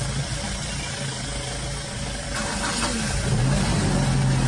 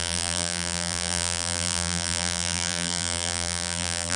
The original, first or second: first